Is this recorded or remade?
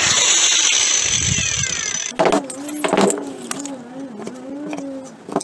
recorded